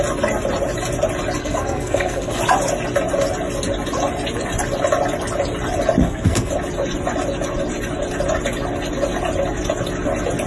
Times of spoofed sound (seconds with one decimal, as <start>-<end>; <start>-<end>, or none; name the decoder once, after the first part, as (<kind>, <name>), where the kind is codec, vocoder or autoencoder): 1.4-2.4 (codec, SNAC); 6.0-6.5